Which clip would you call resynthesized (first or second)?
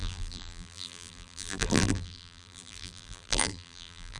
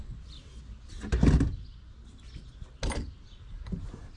first